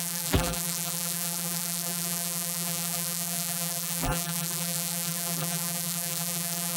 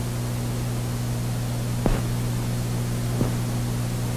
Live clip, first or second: second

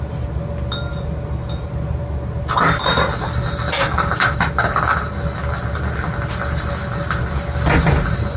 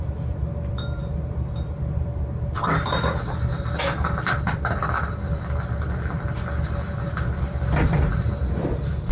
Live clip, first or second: first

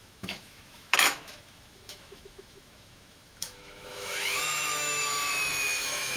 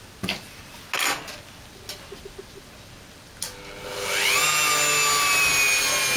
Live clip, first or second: second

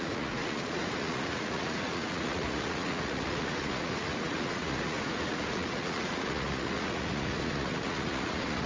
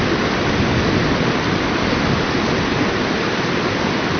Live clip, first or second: second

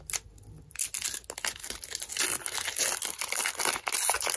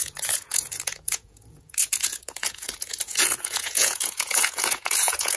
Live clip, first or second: first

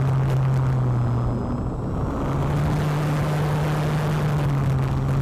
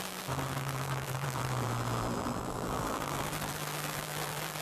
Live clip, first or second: first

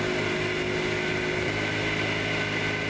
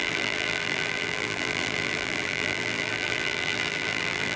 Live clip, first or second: first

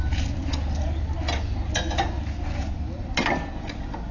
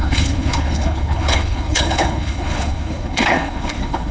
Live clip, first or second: first